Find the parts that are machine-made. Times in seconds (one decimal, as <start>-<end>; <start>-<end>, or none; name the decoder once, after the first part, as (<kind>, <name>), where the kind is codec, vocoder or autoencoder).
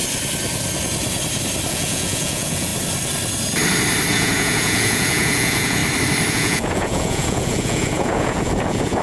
1.7-2.7 (vocoder, Vocos); 4.1-5.8; 6.3-9.0